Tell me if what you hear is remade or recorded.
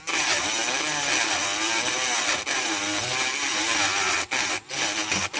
recorded